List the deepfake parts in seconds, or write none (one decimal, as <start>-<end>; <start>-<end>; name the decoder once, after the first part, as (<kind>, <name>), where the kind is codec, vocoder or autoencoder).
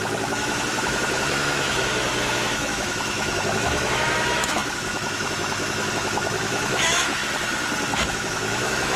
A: 0.0-7.2 (autoencoder, DAC-VAE); 8.0-9.0